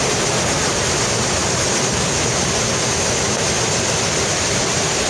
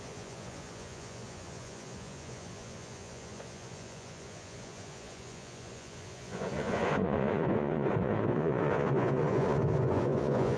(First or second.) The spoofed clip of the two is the second